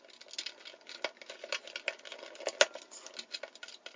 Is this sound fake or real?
real